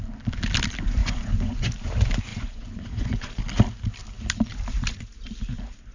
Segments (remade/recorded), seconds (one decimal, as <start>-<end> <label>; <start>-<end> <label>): 0.0-1.0 recorded; 1.0-1.7 remade; 1.7-2.3 recorded; 2.3-3.3 remade; 3.3-5.9 recorded